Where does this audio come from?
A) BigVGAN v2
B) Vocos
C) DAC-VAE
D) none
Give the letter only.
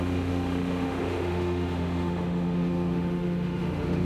C